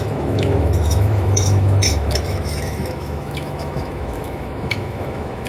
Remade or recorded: remade